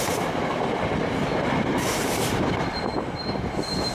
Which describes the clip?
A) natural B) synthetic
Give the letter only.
B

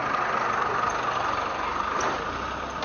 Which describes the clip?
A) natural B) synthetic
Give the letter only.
A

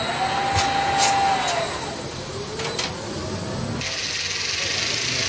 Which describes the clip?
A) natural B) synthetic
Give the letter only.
A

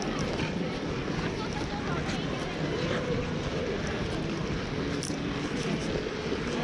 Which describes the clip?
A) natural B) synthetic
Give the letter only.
A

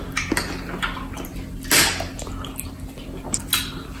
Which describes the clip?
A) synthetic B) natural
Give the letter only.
B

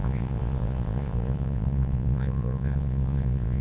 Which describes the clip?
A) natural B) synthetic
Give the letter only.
B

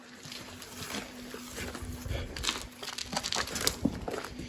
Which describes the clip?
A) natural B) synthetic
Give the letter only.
A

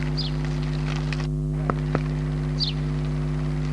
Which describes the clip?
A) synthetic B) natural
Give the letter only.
B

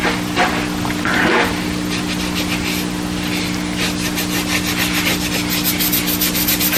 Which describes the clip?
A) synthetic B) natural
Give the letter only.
B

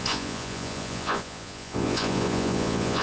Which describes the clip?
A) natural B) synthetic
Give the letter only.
B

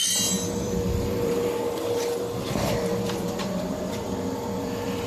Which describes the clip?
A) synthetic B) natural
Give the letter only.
A